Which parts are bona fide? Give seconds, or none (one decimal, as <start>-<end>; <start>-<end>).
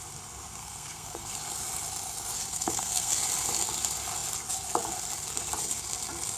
0.0-0.6; 1.3-2.5; 3.1-6.4